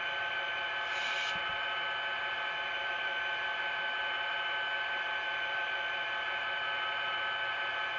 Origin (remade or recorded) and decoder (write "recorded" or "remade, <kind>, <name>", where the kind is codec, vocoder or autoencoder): recorded